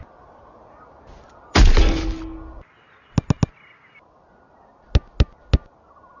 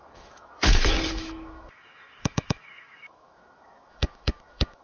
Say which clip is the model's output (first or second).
second